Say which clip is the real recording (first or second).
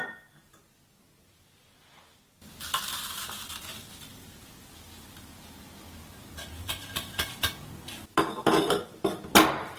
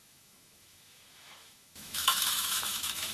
first